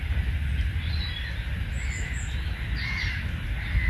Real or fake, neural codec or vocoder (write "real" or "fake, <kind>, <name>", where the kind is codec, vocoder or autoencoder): real